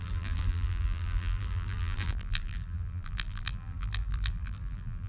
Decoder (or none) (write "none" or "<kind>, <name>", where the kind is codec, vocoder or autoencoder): vocoder, BigVGAN v2